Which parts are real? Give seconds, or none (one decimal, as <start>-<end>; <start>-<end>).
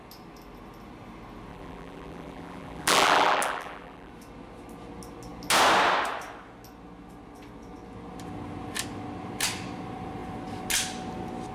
0.0-1.5; 4.1-11.5